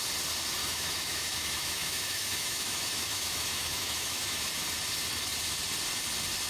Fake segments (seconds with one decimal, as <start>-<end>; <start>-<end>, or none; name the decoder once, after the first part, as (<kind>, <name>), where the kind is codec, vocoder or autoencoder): 0.6-4.5 (autoencoder, DAC-VAE)